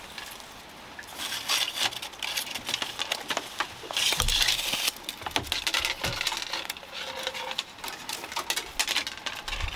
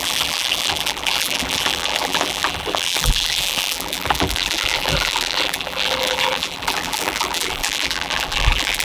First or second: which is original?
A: first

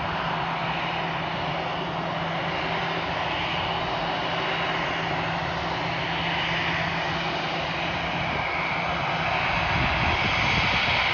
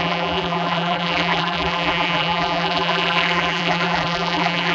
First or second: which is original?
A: first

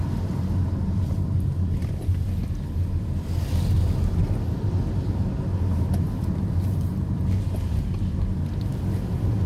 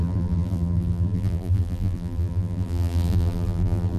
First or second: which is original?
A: first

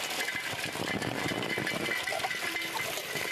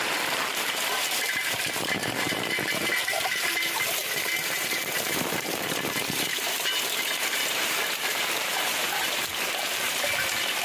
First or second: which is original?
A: first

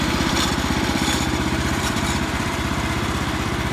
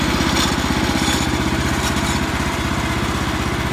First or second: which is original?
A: second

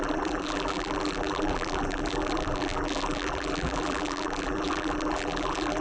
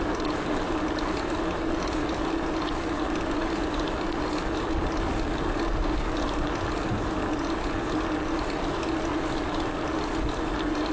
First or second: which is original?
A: second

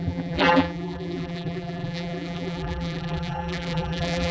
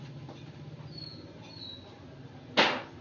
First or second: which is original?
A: second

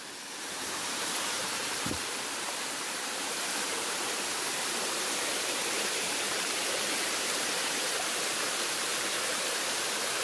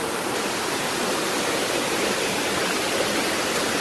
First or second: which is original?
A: second